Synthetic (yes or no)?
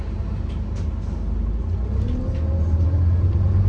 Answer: no